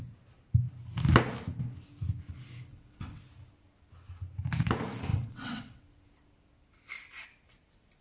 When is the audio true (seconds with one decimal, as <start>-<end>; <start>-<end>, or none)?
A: 0.0-2.7; 3.2-5.1; 5.8-8.0